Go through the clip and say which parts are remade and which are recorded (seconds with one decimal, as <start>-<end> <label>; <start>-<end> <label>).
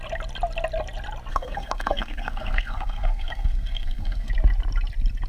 0.0-1.3 recorded; 1.3-4.3 remade; 4.3-5.3 recorded